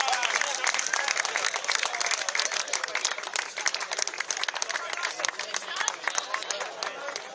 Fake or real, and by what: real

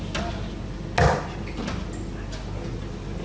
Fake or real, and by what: real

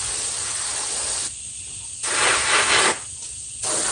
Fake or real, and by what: real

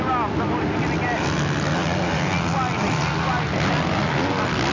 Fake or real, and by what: real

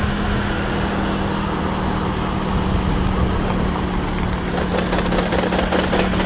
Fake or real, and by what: real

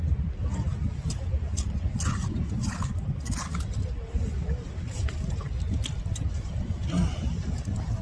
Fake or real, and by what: real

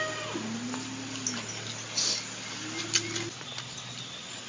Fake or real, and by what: real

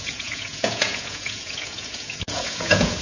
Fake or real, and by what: fake, vocoder, Vocos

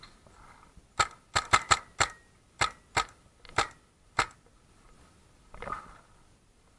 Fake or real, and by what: real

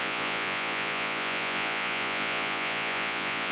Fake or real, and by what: fake, vocoder, Vocos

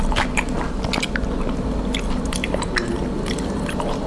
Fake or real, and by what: real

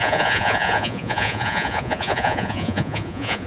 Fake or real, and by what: fake, vocoder, Vocos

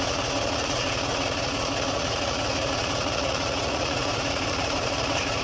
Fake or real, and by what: fake, vocoder, Vocos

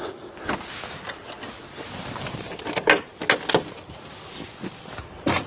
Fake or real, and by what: real